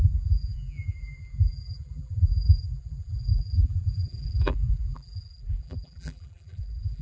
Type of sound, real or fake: fake